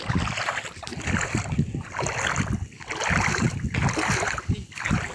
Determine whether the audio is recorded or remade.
recorded